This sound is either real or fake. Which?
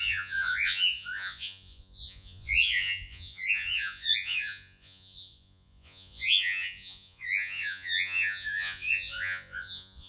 fake